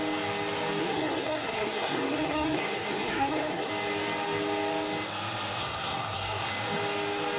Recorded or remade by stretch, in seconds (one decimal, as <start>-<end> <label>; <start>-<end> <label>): 0.0-0.8 recorded; 0.8-3.7 remade; 3.7-5.6 recorded; 5.6-6.5 remade; 6.5-7.4 recorded